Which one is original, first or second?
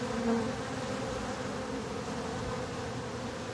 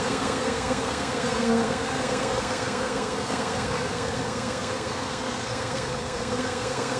first